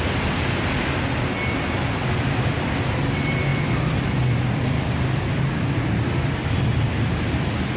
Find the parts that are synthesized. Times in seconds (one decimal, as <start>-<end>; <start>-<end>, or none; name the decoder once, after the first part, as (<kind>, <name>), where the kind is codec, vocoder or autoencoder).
none

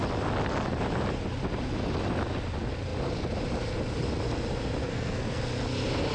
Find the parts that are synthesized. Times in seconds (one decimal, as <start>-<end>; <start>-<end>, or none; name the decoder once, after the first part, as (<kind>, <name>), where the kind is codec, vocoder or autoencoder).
4.8-5.4 (codec, SNAC)

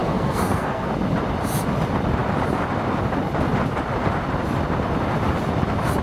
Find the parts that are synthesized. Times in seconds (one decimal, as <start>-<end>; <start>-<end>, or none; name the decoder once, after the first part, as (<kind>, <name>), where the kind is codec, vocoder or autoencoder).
0.0-0.9 (codec, SNAC)

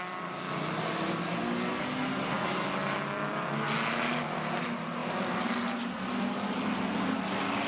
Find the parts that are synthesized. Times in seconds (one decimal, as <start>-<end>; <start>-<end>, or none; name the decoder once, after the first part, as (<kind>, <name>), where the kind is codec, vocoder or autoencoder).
none

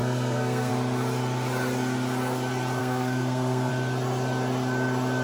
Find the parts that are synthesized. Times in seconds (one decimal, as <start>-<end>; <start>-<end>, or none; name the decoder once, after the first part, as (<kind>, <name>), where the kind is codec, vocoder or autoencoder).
0.0-0.7 (codec, SNAC); 2.8-3.7

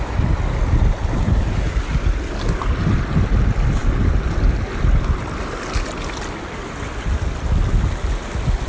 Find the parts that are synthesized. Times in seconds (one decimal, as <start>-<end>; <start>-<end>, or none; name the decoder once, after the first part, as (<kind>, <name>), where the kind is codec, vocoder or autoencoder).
none

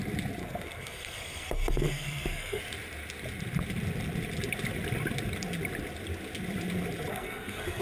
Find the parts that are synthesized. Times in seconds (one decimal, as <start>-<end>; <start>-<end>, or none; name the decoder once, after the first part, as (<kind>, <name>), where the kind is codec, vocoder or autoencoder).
0.4-2.6 (codec, SNAC); 7.1-7.8

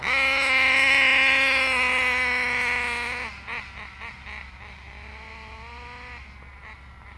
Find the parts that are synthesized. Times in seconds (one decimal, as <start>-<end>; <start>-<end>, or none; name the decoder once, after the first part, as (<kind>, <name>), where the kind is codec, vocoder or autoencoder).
none